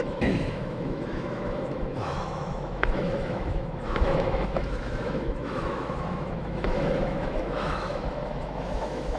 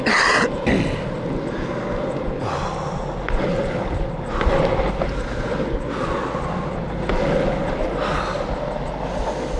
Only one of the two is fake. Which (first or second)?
first